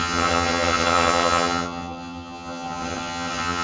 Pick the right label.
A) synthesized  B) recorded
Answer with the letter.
A